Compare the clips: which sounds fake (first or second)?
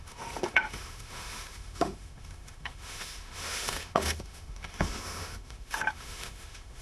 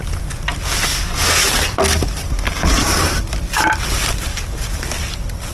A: first